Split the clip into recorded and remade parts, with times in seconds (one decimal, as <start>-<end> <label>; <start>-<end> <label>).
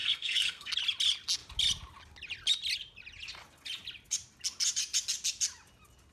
0.0-0.7 remade; 0.7-6.1 recorded